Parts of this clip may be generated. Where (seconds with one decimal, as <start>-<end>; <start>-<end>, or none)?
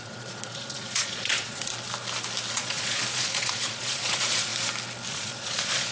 0.0-1.7; 2.5-4.5; 5.1-5.9